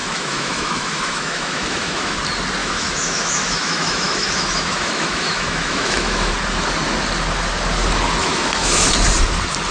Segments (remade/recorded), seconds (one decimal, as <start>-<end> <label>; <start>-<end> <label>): 0.0-2.2 remade; 2.2-2.6 recorded; 2.6-6.3 remade; 6.3-8.2 recorded; 8.2-8.9 remade; 8.9-9.7 recorded